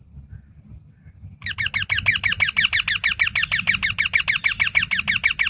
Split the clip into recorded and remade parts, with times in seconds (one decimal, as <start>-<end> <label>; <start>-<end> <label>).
0.0-5.5 recorded